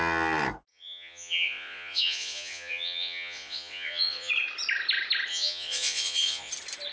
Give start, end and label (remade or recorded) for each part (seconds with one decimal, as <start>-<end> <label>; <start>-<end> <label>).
0.0-0.7 recorded; 0.7-4.3 remade; 4.3-5.3 recorded; 5.3-6.5 remade; 6.5-6.9 recorded